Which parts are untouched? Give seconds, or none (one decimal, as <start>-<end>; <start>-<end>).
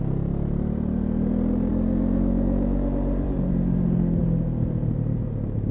0.0-1.7; 3.8-4.2; 5.2-5.7